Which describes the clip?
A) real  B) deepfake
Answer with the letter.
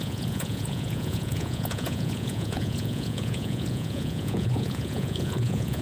B